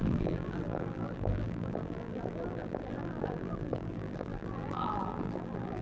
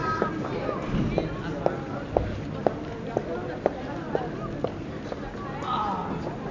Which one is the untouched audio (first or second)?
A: second